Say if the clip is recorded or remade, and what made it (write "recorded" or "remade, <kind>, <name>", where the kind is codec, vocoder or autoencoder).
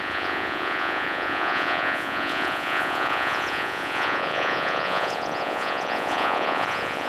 remade, vocoder, Vocos